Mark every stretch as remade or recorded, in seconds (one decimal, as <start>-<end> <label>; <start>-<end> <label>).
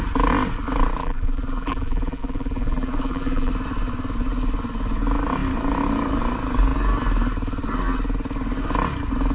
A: 0.0-1.0 recorded; 1.0-3.5 remade; 3.5-9.3 recorded